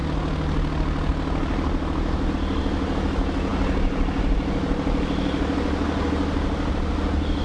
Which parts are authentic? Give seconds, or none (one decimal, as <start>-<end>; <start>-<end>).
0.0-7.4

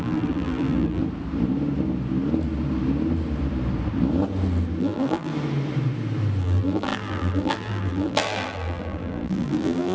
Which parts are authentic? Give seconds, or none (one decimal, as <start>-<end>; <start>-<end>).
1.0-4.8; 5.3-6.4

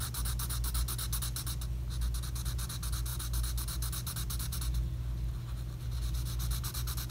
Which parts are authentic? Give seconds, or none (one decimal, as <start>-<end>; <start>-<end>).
0.0-7.1

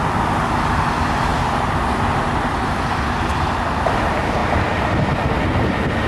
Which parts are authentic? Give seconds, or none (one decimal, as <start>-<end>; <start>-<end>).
0.0-6.1